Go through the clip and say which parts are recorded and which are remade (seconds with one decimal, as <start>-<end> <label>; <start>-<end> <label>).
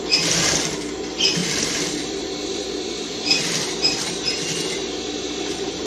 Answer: 0.0-1.4 recorded; 1.4-4.1 remade; 4.1-5.9 recorded